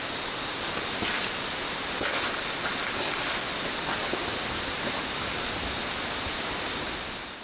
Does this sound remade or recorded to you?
recorded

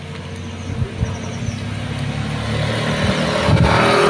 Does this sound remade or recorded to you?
recorded